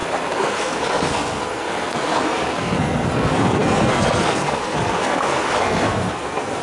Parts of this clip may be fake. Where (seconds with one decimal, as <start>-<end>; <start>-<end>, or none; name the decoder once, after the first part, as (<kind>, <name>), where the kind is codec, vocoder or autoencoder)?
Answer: 0.0-6.6 (codec, SNAC)

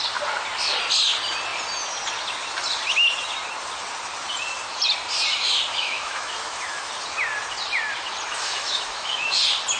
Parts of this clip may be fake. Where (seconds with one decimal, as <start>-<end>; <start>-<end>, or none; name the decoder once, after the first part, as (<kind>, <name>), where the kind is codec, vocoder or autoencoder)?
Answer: 5.7-6.9 (autoencoder, DAC-VAE); 8.3-9.4

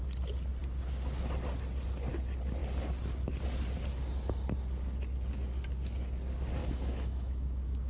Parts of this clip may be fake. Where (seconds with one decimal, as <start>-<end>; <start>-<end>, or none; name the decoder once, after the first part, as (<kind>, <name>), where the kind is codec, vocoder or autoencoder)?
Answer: 6.6-7.9 (autoencoder, DAC-VAE)